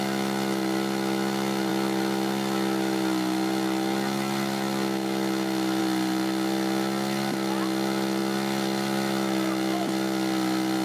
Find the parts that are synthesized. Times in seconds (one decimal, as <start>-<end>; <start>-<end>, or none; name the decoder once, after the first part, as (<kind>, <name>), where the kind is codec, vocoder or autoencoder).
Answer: none